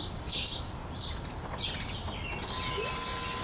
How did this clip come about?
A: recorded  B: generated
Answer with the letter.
A